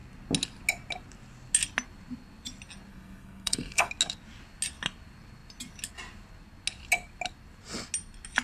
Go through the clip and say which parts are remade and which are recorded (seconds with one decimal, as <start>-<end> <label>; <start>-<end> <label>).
0.0-2.9 recorded; 2.9-3.9 remade; 3.9-8.4 recorded

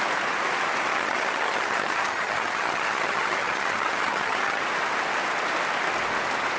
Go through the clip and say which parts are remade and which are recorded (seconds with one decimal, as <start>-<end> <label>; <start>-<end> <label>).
0.0-0.9 recorded; 0.9-4.6 remade; 4.6-6.6 recorded

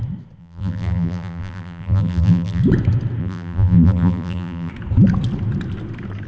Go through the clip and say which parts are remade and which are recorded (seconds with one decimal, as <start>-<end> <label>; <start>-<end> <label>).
0.0-0.4 recorded; 0.4-2.6 remade; 2.6-3.2 recorded; 3.2-4.7 remade; 4.7-6.3 recorded

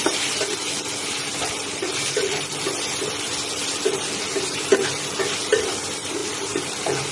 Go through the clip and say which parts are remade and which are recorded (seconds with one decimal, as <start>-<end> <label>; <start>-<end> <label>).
0.0-7.1 remade

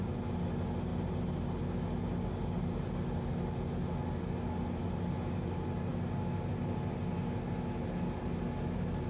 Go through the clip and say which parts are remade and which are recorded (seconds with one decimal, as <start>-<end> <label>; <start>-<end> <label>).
0.0-9.1 recorded

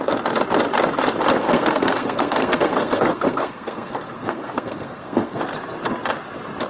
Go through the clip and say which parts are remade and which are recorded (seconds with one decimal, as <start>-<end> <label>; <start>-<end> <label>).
0.0-1.4 recorded; 1.4-5.4 remade; 5.4-6.7 recorded